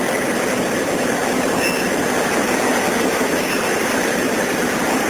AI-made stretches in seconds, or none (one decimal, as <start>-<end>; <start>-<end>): none